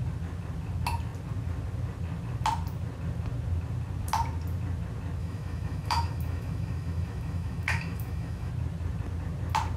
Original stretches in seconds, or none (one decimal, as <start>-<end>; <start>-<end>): 0.0-5.2; 8.5-9.8